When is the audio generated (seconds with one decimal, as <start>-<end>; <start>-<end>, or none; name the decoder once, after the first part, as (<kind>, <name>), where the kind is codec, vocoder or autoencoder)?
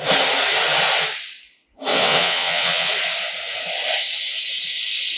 1.9-2.9 (vocoder, WaveNeXt)